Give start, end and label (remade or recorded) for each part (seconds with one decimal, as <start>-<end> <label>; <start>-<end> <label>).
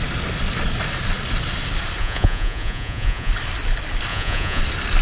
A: 0.0-2.0 recorded; 2.0-3.3 remade; 3.3-4.1 recorded; 4.1-4.6 remade; 4.6-5.0 recorded